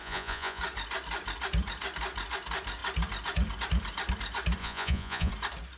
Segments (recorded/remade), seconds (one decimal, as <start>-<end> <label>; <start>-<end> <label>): 0.0-0.6 remade; 0.6-4.6 recorded; 4.6-5.3 remade; 5.3-5.8 recorded